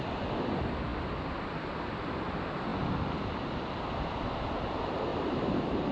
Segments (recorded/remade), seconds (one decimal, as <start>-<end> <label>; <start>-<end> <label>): 0.0-5.1 recorded; 5.1-5.9 remade

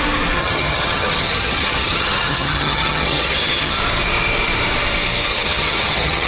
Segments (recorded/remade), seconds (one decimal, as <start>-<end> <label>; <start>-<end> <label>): 0.0-0.4 recorded; 0.4-3.8 remade; 3.8-5.3 recorded; 5.3-6.3 remade

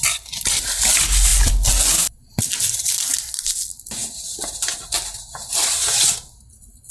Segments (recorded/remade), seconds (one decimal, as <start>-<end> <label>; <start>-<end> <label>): 0.0-6.9 recorded

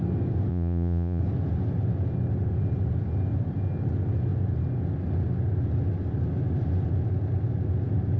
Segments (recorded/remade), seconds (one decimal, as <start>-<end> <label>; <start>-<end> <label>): 0.0-0.5 recorded; 0.5-1.2 remade; 1.2-8.2 recorded

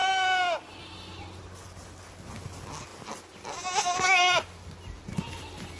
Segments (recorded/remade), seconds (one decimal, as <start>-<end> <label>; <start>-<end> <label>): 0.0-5.8 recorded